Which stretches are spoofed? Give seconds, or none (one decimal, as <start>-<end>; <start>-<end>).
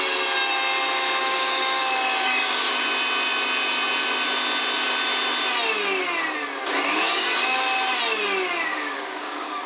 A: 1.2-2.7; 6.9-7.6; 8.7-9.7